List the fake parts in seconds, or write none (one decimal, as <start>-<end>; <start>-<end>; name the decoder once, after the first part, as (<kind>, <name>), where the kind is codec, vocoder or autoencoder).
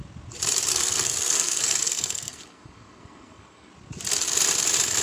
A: 0.7-3.7 (codec, SNAC)